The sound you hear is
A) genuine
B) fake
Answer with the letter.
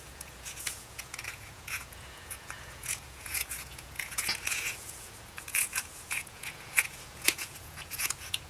B